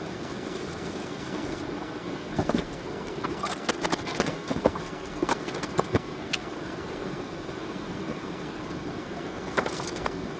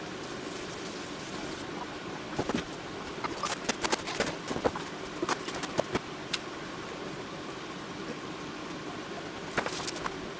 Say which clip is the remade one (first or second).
first